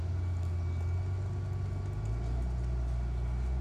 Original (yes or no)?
yes